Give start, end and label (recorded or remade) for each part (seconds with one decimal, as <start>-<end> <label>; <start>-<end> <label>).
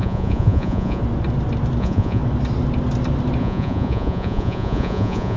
0.0-1.0 remade; 1.0-1.8 recorded; 1.8-2.2 remade; 2.2-3.4 recorded; 3.4-5.4 remade